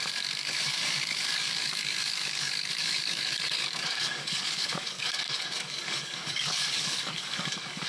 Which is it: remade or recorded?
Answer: remade